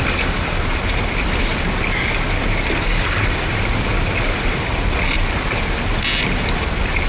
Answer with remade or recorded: recorded